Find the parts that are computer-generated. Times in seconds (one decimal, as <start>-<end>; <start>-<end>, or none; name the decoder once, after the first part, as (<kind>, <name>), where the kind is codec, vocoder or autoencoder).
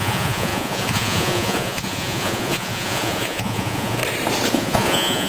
0.0-4.0 (vocoder, Vocos); 4.5-5.3